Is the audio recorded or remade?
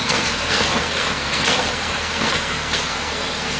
remade